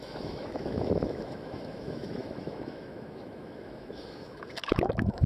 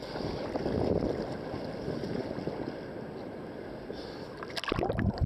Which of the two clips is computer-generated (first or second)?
first